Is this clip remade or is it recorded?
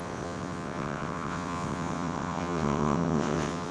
remade